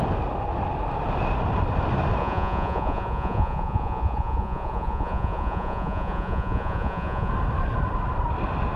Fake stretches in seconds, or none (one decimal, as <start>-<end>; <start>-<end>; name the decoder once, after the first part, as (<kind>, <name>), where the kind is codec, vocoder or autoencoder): 2.2-7.3 (vocoder, Vocos)